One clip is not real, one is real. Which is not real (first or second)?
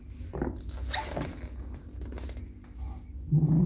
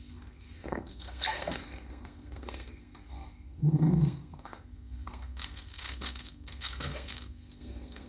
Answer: second